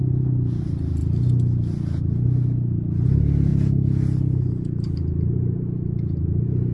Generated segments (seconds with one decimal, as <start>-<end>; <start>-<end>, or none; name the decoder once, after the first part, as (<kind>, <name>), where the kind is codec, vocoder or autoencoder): none